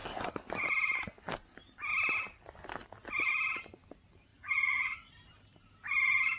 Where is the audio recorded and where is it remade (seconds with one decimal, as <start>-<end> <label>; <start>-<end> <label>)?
0.0-4.3 recorded; 4.3-5.1 remade; 5.1-6.4 recorded